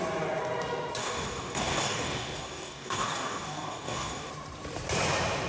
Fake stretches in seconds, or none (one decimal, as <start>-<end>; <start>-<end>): 1.0-4.3